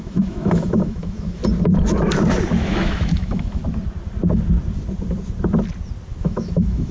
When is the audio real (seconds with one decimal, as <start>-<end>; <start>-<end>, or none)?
1.4-2.5; 3.6-6.2